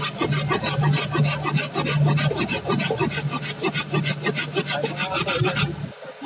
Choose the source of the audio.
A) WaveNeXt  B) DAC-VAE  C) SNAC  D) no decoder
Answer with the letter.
D